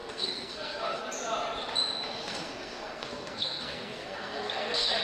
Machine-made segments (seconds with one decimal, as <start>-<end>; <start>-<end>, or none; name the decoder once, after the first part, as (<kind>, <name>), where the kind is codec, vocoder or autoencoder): 0.0-1.0 (codec, SNAC); 2.2-5.0